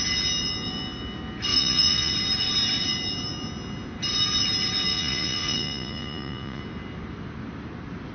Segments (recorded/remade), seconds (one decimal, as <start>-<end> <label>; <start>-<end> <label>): 0.0-1.5 recorded; 1.5-2.1 remade; 2.1-4.9 recorded; 4.9-6.6 remade; 6.6-8.1 recorded